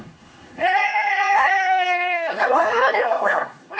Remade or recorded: remade